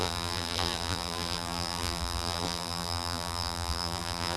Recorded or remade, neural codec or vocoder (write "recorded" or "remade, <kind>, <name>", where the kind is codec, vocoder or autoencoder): remade, vocoder, BigVGAN v2